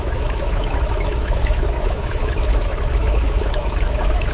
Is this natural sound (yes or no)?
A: no